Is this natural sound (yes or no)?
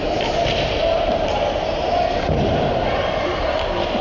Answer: yes